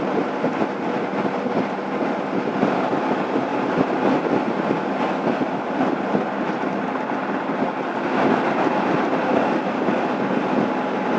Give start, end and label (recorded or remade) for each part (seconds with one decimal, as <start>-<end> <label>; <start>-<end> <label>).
0.0-11.2 recorded